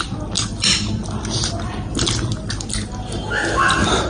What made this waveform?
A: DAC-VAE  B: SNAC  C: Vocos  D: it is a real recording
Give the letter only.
D